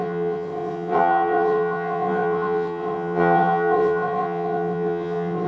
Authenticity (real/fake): fake